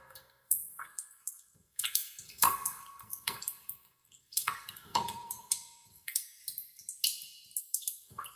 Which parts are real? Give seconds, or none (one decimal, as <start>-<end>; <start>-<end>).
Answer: 6.4-7.6